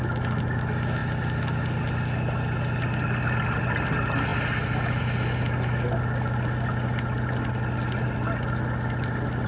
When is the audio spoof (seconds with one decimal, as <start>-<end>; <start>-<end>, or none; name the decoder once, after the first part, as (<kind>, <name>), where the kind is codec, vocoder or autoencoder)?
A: none